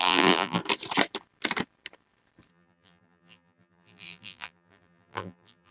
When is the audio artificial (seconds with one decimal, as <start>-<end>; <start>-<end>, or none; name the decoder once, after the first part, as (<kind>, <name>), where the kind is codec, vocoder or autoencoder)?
0.0-0.6 (vocoder, BigVGAN v2); 2.5-5.7